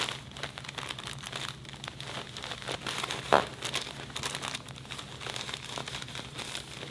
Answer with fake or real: real